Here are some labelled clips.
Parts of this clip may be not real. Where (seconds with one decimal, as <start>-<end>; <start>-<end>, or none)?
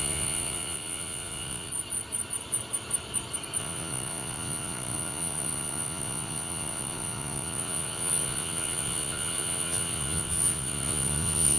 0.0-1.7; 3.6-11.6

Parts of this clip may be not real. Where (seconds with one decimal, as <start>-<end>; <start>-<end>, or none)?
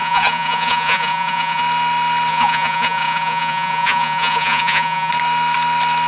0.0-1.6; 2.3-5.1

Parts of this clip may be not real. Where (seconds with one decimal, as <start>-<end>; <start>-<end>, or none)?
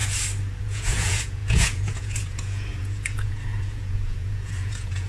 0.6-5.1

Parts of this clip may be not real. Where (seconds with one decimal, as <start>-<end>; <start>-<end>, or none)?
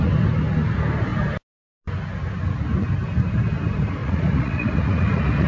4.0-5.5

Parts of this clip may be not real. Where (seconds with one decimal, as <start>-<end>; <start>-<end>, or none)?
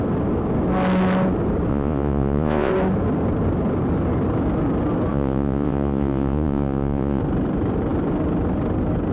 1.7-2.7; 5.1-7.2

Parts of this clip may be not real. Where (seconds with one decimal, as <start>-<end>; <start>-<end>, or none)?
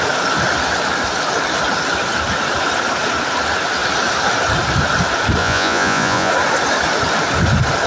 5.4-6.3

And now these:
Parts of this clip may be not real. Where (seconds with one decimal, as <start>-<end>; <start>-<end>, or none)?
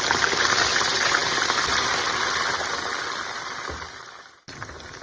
none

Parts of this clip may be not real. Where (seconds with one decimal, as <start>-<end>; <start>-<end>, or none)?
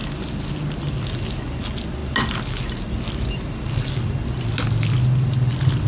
none